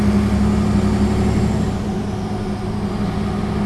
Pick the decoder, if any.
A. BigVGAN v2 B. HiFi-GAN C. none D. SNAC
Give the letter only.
C